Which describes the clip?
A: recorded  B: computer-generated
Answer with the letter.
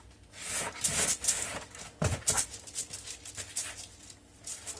A